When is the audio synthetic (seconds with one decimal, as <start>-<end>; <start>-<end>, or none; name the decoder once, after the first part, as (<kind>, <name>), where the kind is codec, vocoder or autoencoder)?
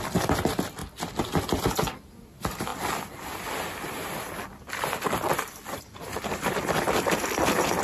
0.0-7.8 (vocoder, BigVGAN v2)